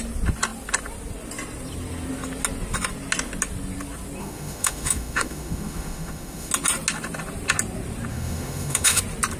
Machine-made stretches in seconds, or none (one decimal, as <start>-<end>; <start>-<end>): 4.2-6.5; 8.1-9.0